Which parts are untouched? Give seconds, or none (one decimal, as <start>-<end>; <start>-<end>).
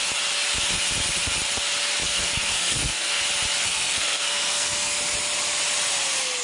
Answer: 0.0-2.1; 3.2-3.6; 5.0-6.4